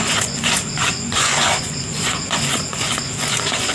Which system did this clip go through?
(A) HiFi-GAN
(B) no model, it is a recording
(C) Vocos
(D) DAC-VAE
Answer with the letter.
C